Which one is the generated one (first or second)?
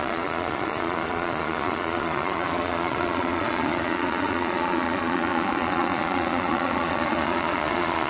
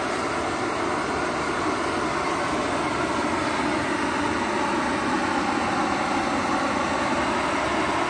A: first